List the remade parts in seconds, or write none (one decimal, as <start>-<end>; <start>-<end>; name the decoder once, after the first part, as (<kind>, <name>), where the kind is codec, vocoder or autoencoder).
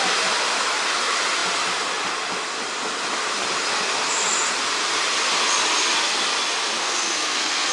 6.8-7.7 (codec, SNAC)